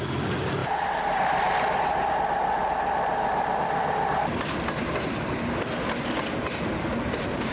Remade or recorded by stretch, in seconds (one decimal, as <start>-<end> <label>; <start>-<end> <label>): 0.0-7.5 recorded